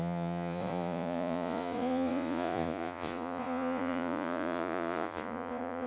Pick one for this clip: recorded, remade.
remade